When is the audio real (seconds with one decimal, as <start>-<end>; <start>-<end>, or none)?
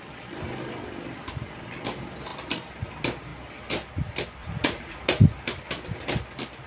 0.0-4.4; 5.2-6.7